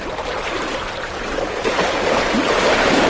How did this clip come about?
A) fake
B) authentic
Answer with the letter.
A